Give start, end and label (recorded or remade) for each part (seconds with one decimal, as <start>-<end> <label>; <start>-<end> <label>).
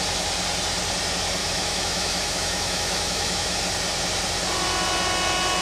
0.0-1.4 recorded; 1.4-3.6 remade; 3.6-5.6 recorded